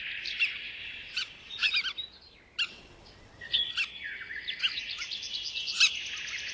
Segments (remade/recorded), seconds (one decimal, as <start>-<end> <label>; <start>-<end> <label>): 0.0-0.8 recorded; 0.8-1.7 remade; 1.7-2.7 recorded; 2.7-3.7 remade; 3.7-6.5 recorded